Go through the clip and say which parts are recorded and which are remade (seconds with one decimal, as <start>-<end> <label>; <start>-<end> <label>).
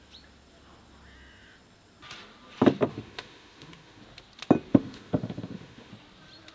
0.0-2.9 recorded; 2.9-4.0 remade; 4.0-4.7 recorded; 4.7-5.9 remade; 5.9-6.5 recorded